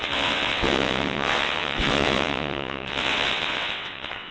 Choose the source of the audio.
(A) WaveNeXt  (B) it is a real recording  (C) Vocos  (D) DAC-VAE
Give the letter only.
A